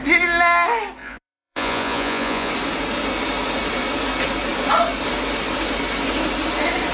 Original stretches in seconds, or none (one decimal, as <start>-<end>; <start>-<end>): 0.0-1.0; 2.5-6.9